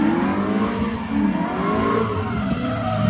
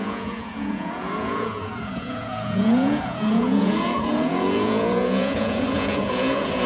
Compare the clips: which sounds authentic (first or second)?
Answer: first